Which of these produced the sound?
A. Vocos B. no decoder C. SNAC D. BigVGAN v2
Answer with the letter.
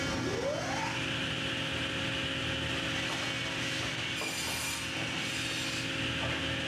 B